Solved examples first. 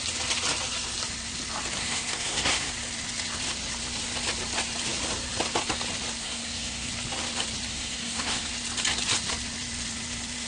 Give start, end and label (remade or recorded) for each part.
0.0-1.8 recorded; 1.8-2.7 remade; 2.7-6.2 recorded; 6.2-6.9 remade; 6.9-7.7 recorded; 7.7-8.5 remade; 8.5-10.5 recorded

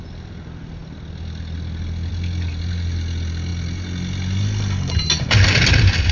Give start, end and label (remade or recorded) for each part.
0.0-6.1 recorded

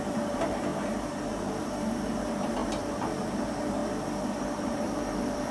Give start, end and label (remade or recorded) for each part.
0.0-0.7 remade; 0.7-1.3 recorded; 1.3-3.8 remade; 3.8-4.4 recorded; 4.4-5.5 remade

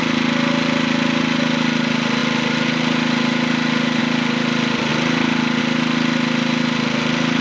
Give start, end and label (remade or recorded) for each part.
0.0-7.4 recorded